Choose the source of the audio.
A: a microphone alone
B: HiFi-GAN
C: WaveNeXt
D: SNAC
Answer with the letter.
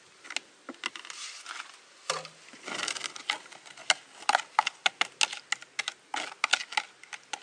A